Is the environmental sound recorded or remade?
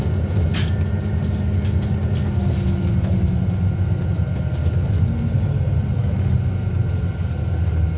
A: recorded